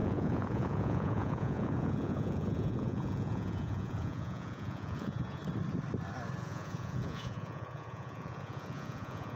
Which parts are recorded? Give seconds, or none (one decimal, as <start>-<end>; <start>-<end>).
5.4-6.4